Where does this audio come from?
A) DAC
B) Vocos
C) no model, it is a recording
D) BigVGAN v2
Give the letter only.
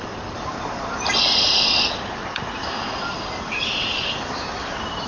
C